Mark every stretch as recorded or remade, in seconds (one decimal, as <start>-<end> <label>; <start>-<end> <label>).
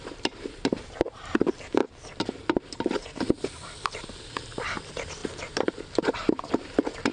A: 0.0-1.8 remade; 1.8-2.6 recorded; 2.6-3.0 remade; 3.0-3.6 recorded; 3.6-7.1 remade